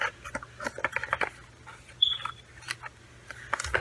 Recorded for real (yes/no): yes